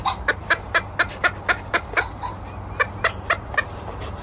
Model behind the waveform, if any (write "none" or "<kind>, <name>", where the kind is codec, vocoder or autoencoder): none